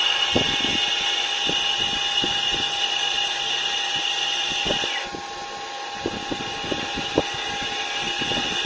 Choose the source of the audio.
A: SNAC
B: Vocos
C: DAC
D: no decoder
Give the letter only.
D